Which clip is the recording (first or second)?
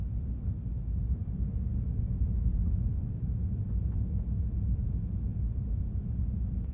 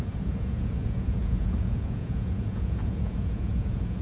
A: first